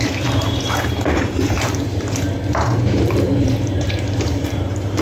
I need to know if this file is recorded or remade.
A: remade